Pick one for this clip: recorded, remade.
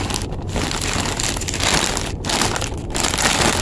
recorded